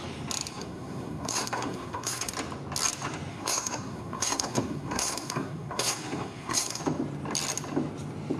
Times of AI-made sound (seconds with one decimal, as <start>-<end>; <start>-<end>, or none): 0.5-2.3; 3.3-6.8